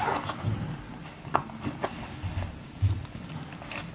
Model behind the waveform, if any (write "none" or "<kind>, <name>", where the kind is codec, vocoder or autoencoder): none